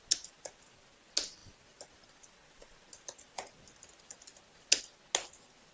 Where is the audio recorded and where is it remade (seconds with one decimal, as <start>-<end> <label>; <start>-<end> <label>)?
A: 0.0-5.7 recorded